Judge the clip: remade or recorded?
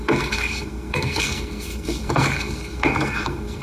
remade